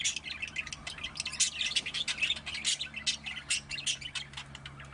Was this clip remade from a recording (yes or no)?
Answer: no